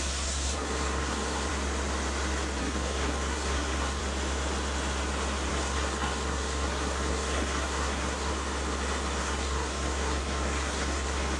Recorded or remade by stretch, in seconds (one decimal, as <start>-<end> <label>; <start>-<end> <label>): 0.0-1.5 remade; 1.5-2.6 recorded; 2.6-4.0 remade; 4.0-5.5 recorded; 5.5-8.3 remade; 8.3-9.2 recorded; 9.2-11.4 remade